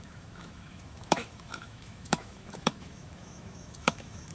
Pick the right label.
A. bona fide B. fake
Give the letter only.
B